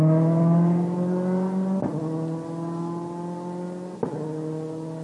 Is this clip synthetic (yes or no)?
no